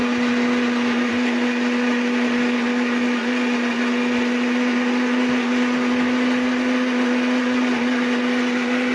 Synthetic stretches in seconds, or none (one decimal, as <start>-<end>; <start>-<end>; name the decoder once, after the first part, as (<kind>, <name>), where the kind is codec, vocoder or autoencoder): none